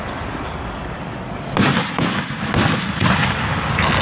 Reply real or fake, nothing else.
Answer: real